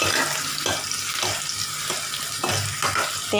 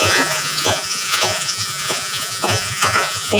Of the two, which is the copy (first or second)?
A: second